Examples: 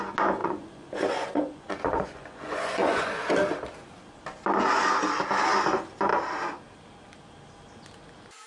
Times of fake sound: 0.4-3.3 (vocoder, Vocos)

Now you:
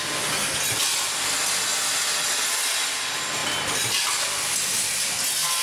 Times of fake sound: none

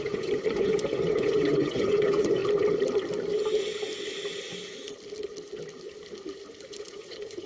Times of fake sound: 0.0-2.4 (vocoder, Vocos); 6.7-7.5